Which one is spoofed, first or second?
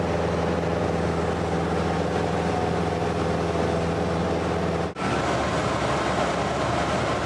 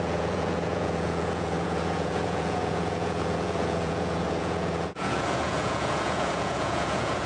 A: second